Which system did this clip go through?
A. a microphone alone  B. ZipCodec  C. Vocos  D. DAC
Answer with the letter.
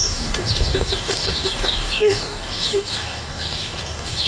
D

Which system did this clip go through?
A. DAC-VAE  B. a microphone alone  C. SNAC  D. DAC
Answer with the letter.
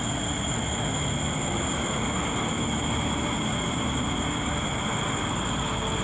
B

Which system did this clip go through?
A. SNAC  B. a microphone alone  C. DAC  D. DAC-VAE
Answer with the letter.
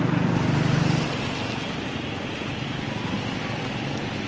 B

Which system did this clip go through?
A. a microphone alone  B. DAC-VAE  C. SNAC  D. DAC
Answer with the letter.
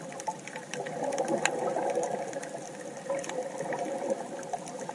A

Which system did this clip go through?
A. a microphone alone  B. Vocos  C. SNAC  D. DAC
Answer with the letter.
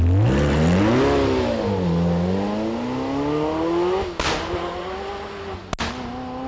A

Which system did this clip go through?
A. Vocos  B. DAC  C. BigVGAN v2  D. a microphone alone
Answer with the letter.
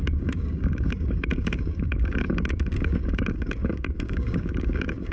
B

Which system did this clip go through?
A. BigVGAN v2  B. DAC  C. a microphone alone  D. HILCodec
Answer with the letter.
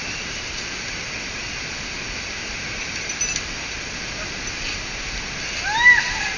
C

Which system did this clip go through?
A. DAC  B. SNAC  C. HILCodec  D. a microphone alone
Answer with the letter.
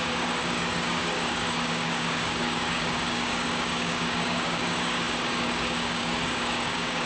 A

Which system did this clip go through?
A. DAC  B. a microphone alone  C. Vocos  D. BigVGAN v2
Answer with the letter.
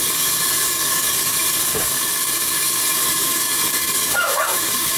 A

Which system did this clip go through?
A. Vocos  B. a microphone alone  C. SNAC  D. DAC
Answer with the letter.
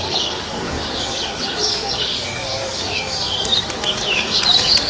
D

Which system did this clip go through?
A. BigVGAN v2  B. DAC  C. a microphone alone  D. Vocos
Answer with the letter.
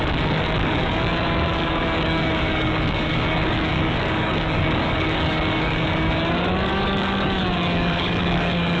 B